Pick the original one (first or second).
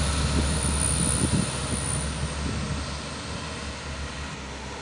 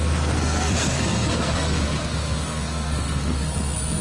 first